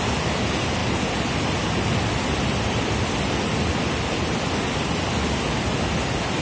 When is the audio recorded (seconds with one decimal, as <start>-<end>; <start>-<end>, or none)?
0.0-6.4